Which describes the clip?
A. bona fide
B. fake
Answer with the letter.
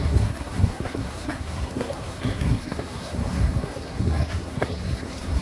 B